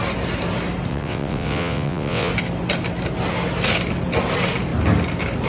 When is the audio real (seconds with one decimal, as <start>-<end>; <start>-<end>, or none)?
0.0-0.9; 2.3-5.5